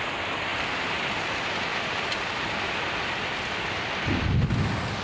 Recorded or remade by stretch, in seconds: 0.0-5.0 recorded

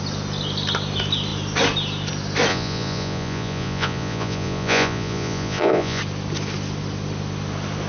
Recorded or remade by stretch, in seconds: 0.0-2.5 recorded; 2.5-6.0 remade; 6.0-7.9 recorded